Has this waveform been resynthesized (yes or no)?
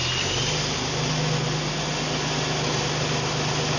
no